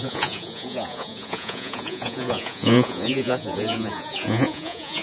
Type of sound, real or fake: fake